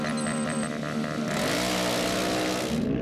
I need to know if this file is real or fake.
real